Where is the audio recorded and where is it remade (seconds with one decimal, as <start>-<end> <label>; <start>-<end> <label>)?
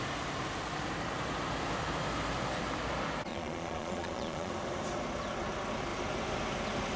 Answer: 0.0-3.3 recorded; 3.3-4.5 remade; 4.5-7.0 recorded